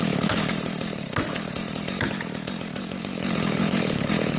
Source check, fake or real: fake